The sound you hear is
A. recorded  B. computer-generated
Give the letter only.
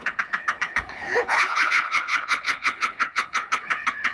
B